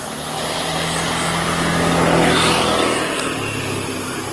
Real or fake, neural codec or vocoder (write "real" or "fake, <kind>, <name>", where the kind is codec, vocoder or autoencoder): real